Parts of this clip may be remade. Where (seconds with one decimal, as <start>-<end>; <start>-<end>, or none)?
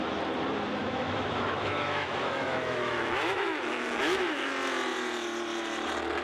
0.8-4.5